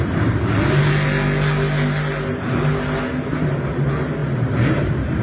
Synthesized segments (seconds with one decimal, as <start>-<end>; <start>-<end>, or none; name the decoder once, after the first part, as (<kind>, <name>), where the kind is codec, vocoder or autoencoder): none